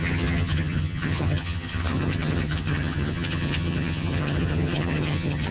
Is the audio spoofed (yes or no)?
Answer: yes